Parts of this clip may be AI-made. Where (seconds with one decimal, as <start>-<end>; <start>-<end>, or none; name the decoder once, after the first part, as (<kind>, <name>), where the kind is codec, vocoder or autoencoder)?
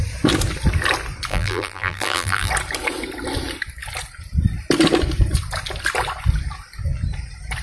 1.3-2.5 (vocoder, BigVGAN v2)